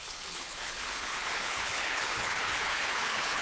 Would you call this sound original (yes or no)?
no